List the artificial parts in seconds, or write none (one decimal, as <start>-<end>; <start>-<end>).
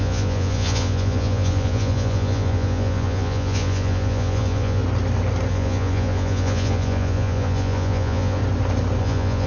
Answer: 0.0-4.8; 5.5-8.4; 9.0-9.5